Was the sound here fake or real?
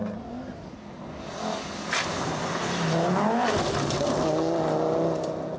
real